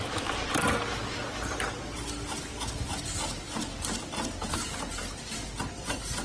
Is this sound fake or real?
real